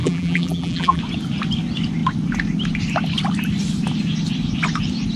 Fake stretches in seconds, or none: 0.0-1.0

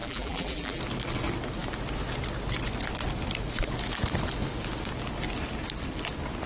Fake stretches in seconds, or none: 0.0-0.8

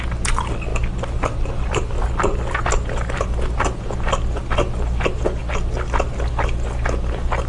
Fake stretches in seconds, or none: none

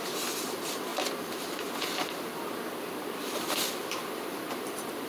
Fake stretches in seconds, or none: 0.0-0.9; 4.0-5.1

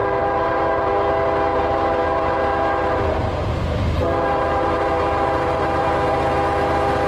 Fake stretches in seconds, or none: 0.0-0.9; 1.5-5.8